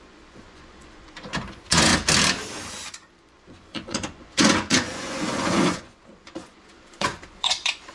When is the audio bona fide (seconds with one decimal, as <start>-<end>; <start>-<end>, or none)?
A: 1.9-2.7